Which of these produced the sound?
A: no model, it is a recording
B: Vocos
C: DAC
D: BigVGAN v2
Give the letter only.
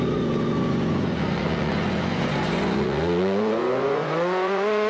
B